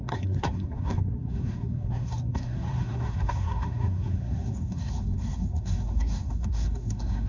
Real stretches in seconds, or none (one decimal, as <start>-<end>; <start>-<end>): none